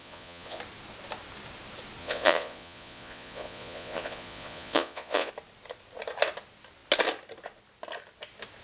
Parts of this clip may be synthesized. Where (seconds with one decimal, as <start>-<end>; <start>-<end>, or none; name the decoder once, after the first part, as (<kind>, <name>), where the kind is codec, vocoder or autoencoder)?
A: 0.0-0.6 (vocoder, Vocos); 2.0-5.3